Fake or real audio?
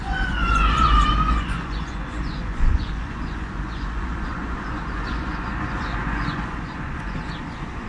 fake